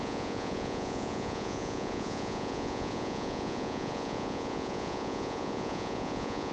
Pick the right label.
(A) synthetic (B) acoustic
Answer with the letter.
A